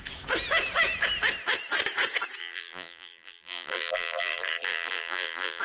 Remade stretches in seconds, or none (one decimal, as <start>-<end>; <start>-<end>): 2.4-5.6